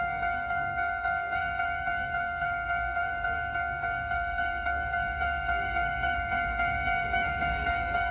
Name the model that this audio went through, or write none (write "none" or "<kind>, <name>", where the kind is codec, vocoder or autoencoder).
codec, SNAC